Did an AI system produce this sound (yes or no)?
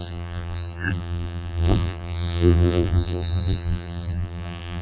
yes